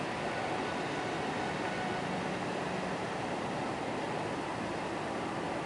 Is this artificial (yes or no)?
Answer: no